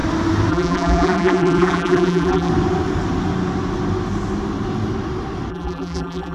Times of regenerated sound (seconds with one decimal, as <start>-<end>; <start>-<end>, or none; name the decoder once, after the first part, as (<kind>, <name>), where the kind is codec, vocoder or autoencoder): 0.5-2.5 (vocoder, BigVGAN v2); 5.5-6.3